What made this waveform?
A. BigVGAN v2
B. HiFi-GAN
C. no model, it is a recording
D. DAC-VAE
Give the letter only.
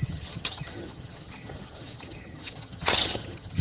B